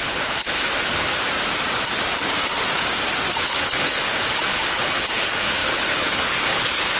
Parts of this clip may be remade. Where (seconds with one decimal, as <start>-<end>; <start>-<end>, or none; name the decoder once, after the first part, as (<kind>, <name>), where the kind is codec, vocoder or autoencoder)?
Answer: 0.0-1.2 (codec, HILCodec); 3.4-7.0

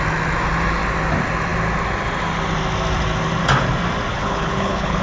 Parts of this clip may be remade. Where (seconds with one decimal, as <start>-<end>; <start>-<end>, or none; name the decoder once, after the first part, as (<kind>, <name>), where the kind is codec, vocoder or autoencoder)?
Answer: 4.1-5.0 (codec, HILCodec)

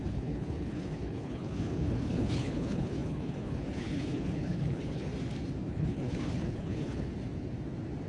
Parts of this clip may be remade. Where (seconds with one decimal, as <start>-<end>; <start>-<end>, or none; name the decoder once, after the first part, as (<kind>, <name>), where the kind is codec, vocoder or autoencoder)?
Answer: 0.0-5.1 (codec, HILCodec); 5.7-7.1